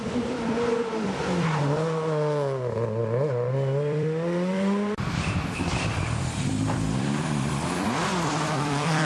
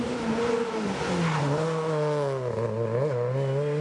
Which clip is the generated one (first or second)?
first